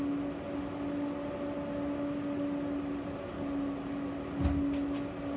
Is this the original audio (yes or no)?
yes